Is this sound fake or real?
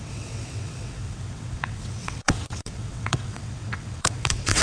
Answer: fake